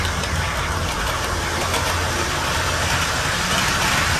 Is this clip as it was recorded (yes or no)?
yes